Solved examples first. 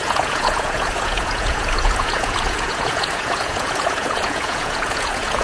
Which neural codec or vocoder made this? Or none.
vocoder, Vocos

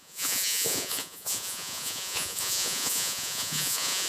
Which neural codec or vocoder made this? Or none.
vocoder, Vocos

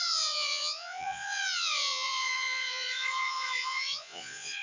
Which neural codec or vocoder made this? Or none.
vocoder, Vocos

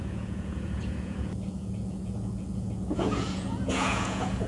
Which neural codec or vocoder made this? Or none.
vocoder, Vocos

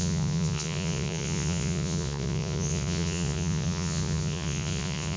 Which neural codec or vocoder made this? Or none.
vocoder, Vocos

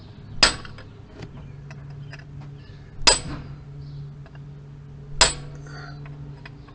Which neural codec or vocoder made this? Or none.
none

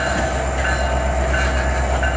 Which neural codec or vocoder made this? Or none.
none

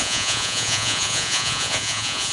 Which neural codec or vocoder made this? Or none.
vocoder, Vocos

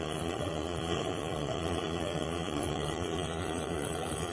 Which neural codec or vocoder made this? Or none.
vocoder, Vocos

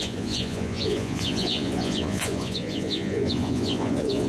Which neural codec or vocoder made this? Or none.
vocoder, Vocos